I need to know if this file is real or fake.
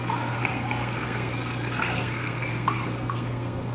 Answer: fake